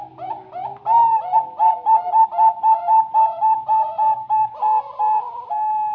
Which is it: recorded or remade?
recorded